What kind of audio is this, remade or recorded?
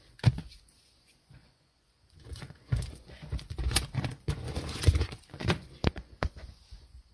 remade